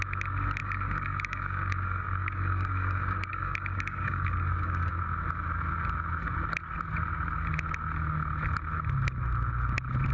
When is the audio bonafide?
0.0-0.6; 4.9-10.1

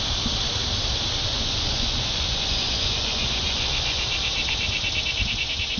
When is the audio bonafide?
0.0-1.3; 4.0-5.8

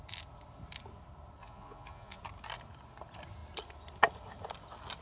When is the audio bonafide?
0.0-1.4; 2.2-5.0

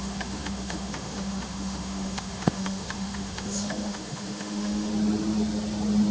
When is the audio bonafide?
4.9-6.1

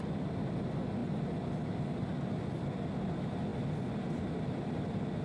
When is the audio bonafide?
0.0-5.2

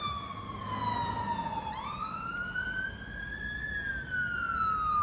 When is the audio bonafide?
0.0-5.0

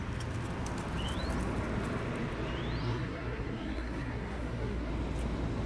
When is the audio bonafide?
0.0-2.8; 4.9-5.7